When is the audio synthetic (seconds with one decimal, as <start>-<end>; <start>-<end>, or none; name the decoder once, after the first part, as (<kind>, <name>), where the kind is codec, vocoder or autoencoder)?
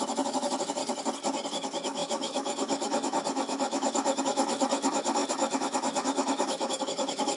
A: 0.0-0.8 (autoencoder, DAC-VAE); 1.5-7.4